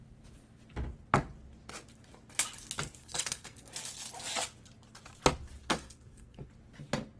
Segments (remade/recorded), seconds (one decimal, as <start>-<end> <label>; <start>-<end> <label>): 0.0-3.0 recorded; 3.0-3.7 remade; 3.7-5.6 recorded; 5.6-6.5 remade; 6.5-7.2 recorded